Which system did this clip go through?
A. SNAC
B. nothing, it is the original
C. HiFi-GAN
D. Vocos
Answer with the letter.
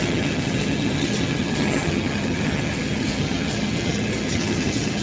C